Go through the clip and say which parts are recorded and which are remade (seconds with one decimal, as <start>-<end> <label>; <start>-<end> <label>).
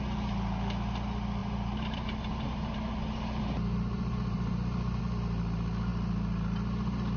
0.0-1.4 recorded; 1.4-5.0 remade; 5.0-7.2 recorded